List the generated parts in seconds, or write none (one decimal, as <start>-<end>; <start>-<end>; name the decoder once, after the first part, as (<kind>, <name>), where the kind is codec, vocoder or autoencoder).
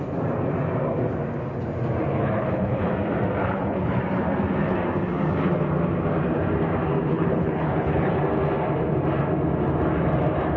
2.1-2.9 (codec, HILCodec); 3.4-4.0; 7.1-8.1